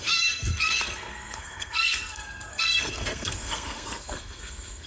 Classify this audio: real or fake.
fake